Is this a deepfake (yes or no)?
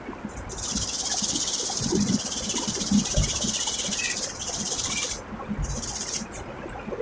no